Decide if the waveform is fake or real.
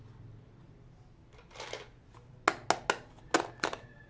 real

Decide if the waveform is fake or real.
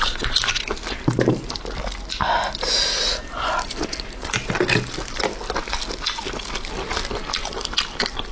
real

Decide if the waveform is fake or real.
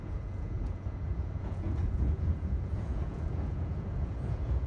fake